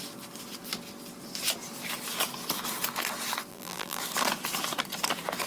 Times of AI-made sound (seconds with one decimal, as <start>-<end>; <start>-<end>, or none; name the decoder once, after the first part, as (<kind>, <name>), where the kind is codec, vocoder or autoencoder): 3.5-4.0 (vocoder, BigVGAN v2)